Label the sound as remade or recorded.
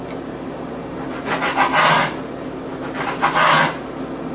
recorded